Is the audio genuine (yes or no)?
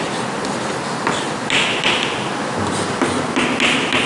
yes